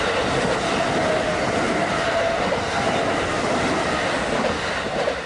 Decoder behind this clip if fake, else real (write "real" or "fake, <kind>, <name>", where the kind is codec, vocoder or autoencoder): real